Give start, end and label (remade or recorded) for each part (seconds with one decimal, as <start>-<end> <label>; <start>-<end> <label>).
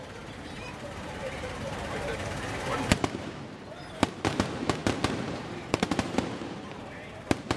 0.0-4.8 remade; 4.8-5.3 recorded; 5.3-7.6 remade